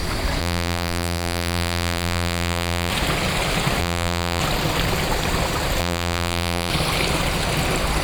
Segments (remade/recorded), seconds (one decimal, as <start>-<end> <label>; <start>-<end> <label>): 0.0-0.4 recorded; 0.4-2.9 remade; 2.9-3.8 recorded; 3.8-4.4 remade; 4.4-5.8 recorded; 5.8-6.7 remade; 6.7-8.0 recorded